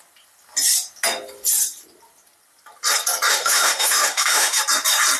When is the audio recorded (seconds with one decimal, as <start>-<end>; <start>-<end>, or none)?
0.0-3.3; 4.6-5.2